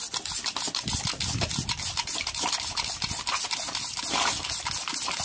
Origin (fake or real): real